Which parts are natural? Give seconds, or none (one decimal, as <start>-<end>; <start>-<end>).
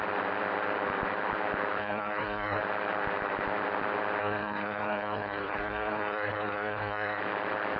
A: 0.0-1.8; 2.6-4.2; 7.2-7.8